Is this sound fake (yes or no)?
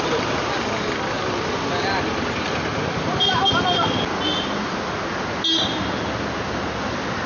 no